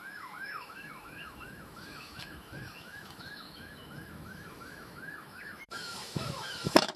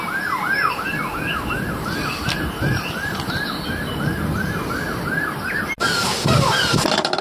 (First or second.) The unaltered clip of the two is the second